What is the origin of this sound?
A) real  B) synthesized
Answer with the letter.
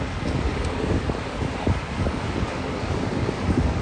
B